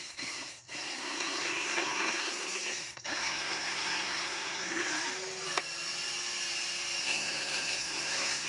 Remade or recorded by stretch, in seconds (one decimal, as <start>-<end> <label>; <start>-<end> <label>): 0.0-4.9 remade; 4.9-7.0 recorded; 7.0-8.5 remade